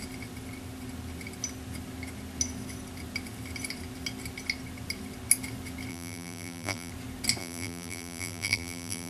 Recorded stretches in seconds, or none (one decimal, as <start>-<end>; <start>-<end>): 0.0-5.9; 6.9-7.4